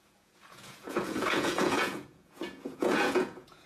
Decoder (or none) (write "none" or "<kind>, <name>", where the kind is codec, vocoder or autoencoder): vocoder, Vocos